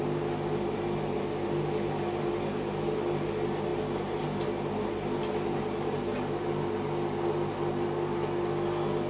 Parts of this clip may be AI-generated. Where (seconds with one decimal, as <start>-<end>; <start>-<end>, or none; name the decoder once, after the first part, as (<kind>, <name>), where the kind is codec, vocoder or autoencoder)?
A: none